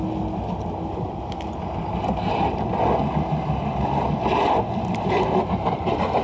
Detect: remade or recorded recorded